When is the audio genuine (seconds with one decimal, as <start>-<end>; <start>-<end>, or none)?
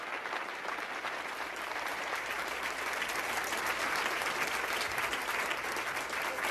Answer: 0.0-6.5